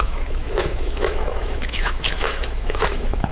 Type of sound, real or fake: fake